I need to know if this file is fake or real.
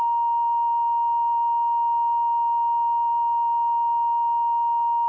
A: real